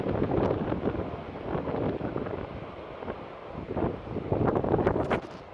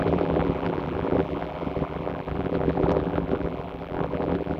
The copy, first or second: second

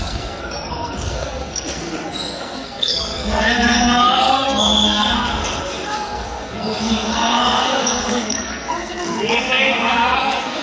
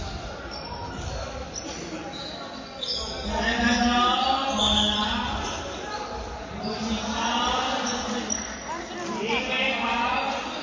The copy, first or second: first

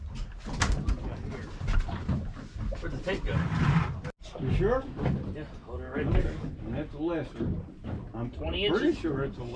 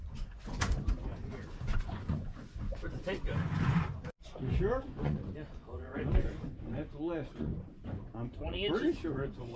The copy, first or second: second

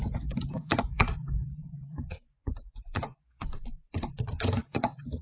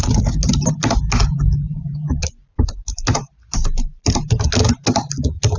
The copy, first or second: first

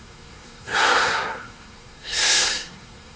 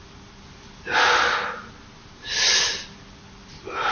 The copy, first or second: first